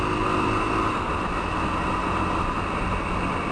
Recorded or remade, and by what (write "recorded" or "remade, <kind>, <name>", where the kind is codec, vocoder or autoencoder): recorded